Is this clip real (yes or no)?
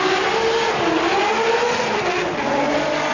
yes